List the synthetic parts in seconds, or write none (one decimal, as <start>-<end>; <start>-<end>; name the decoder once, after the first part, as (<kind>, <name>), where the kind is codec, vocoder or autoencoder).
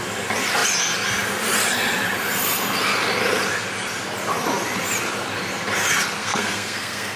6.2-7.2 (codec, SNAC)